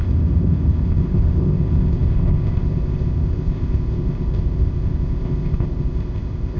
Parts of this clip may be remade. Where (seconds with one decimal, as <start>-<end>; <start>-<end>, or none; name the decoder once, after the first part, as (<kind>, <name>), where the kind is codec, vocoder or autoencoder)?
0.0-6.6 (codec, ZipCodec)